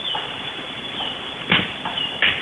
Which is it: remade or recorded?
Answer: remade